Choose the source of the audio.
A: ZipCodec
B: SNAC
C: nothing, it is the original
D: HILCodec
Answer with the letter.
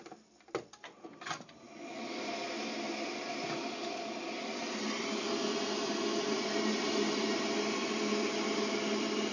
C